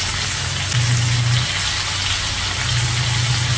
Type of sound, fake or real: real